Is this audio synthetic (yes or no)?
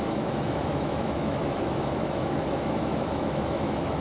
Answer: yes